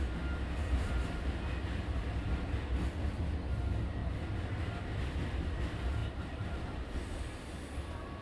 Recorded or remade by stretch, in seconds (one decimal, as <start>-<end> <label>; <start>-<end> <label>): 0.0-0.6 recorded; 0.6-1.5 remade; 1.5-6.0 recorded; 6.0-7.4 remade; 7.4-8.2 recorded